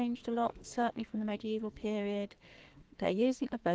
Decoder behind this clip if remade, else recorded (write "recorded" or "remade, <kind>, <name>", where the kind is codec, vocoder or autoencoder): remade, codec, SNAC